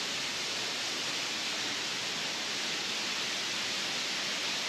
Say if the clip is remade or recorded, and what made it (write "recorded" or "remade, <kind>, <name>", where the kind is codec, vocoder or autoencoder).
recorded